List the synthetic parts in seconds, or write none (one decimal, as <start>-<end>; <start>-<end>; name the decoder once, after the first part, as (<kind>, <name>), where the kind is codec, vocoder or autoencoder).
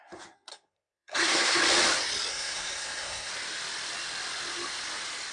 0.5-1.6 (codec, SNAC); 2.3-3.3